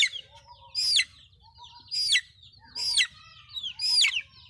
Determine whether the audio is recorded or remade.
recorded